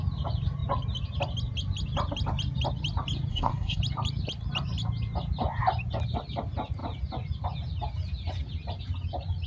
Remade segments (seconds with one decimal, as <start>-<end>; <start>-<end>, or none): 3.3-3.8